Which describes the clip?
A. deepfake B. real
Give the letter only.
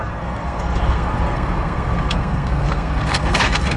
A